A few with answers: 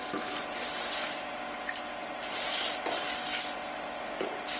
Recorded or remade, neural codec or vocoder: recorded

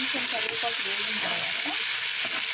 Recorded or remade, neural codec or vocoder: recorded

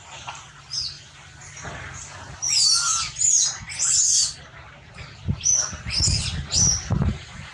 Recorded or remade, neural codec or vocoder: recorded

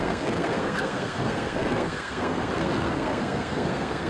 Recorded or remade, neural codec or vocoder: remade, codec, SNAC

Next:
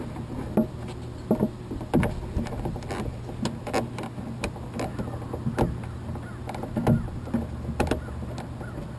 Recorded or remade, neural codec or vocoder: recorded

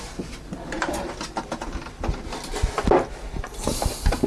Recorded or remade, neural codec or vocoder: recorded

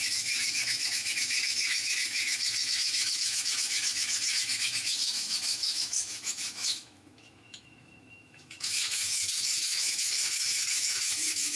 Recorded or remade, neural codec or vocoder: remade, autoencoder, DAC-VAE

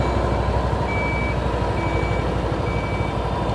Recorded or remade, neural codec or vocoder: recorded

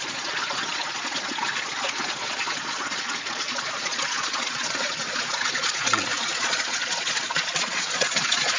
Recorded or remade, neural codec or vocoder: remade, vocoder, Vocos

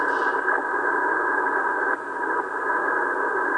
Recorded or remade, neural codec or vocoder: recorded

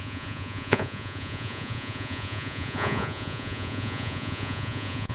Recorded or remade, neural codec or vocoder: remade, vocoder, Vocos